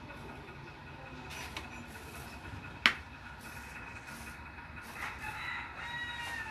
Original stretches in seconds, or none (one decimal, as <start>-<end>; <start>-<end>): 0.0-6.5